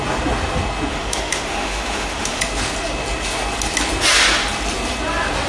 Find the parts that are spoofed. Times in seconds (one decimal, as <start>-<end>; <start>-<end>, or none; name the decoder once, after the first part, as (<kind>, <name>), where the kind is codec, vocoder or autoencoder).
0.9-2.4 (autoencoder, DAC-VAE)